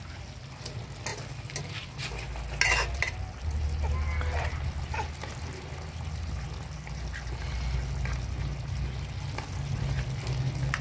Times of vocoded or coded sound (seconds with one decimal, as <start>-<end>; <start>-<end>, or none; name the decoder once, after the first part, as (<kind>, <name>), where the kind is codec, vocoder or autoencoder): none